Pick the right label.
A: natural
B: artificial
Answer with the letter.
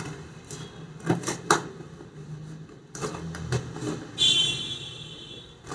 A